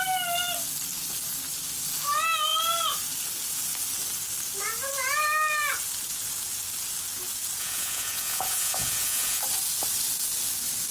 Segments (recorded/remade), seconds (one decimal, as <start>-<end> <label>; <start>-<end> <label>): 0.0-7.6 recorded; 7.6-9.4 remade; 9.4-10.9 recorded